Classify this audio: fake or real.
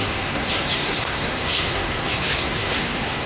fake